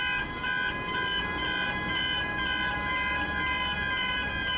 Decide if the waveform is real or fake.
real